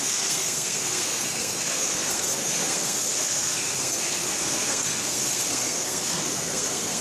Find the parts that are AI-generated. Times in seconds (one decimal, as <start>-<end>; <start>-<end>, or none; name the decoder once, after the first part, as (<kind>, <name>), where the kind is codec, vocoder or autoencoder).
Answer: 0.0-7.0 (codec, SNAC)